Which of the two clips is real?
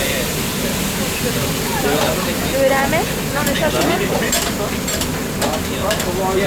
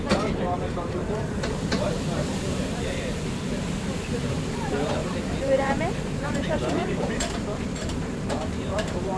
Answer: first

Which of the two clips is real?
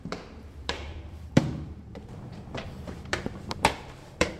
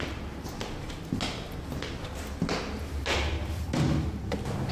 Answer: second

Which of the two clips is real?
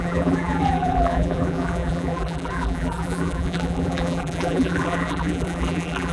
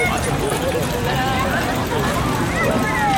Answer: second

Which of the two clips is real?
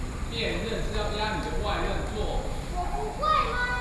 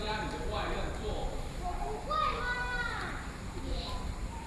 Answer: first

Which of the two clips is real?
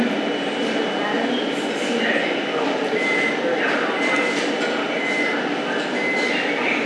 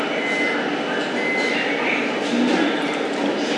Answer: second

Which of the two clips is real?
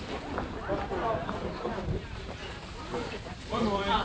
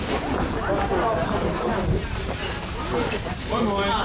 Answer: second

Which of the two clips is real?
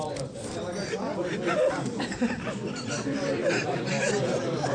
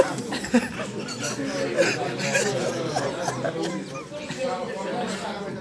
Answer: second